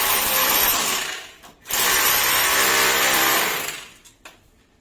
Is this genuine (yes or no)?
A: no